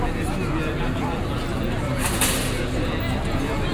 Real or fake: real